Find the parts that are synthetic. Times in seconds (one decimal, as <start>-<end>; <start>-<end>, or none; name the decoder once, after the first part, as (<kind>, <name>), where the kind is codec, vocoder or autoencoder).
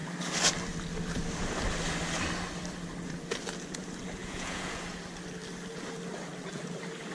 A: 4.2-5.0 (vocoder, Vocos)